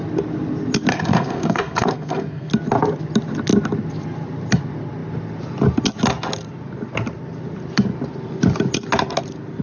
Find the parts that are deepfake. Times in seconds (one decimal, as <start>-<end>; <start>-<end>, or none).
0.9-2.5